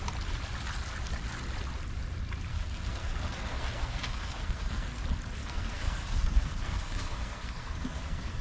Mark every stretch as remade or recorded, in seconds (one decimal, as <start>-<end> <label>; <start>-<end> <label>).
0.0-2.5 recorded; 2.5-5.0 remade; 5.0-5.4 recorded; 5.4-8.4 remade